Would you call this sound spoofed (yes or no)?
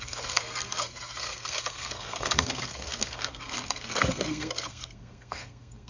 yes